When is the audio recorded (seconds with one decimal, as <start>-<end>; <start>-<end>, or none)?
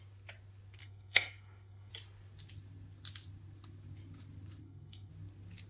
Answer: 0.0-0.8; 1.9-4.6; 5.1-5.7